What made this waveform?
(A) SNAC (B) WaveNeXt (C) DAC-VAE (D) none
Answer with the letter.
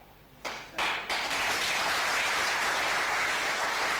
D